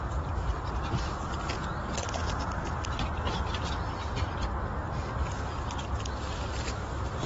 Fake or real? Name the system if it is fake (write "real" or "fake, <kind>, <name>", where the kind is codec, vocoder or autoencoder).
real